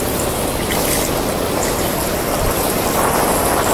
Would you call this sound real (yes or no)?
yes